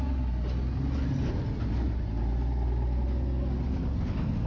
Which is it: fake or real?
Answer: real